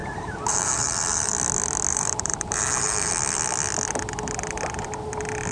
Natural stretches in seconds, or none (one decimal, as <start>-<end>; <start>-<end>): 1.3-1.9; 3.1-5.5